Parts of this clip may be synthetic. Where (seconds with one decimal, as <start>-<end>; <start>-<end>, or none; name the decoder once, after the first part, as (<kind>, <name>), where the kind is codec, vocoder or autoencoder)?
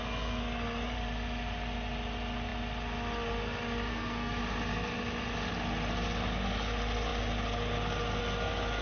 3.9-4.4 (codec, SNAC)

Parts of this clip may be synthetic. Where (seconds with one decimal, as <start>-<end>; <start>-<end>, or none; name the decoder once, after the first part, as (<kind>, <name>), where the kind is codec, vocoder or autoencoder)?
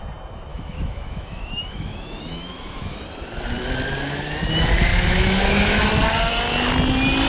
0.5-3.0 (autoencoder, DAC-VAE); 4.9-5.8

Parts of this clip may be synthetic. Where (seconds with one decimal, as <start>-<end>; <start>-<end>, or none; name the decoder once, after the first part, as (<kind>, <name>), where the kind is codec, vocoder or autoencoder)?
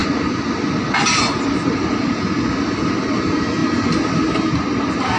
none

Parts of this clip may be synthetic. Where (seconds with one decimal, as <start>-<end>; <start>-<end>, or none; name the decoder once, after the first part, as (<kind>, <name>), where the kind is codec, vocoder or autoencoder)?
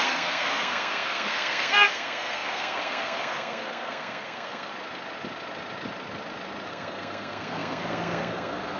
0.0-4.7 (codec, SNAC); 6.7-8.8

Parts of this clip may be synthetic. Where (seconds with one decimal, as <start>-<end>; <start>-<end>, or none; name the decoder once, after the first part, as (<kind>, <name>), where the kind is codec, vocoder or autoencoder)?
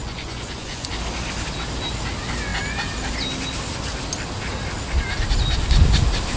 0.0-0.9 (vocoder, Vocos)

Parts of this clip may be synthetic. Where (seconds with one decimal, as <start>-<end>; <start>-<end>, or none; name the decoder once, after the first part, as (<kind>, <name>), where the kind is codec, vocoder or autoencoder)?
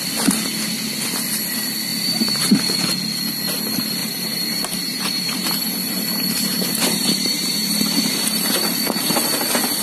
1.9-2.4 (vocoder, BigVGAN v2); 4.0-9.1